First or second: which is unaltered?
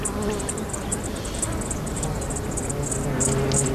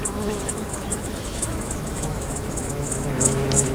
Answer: first